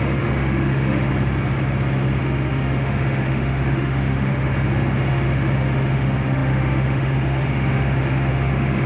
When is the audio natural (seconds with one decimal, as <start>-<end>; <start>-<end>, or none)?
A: 1.1-2.2; 4.5-5.1